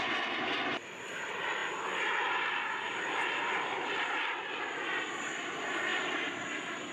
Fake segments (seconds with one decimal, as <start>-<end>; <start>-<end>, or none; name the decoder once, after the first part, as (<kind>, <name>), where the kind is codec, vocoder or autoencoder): none